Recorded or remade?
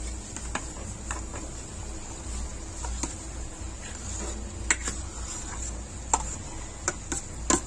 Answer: recorded